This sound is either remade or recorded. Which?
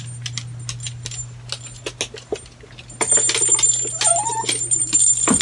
recorded